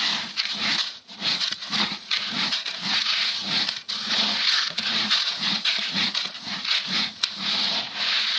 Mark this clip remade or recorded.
remade